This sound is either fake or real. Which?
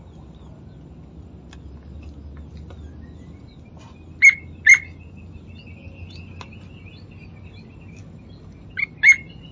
real